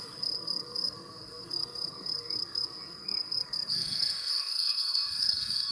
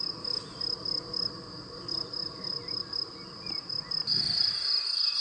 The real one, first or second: second